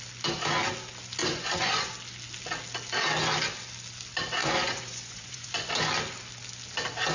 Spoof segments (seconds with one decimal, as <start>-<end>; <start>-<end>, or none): 1.2-1.9; 4.4-5.7